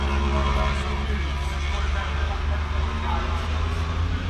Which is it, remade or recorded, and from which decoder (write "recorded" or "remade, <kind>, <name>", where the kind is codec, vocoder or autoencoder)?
recorded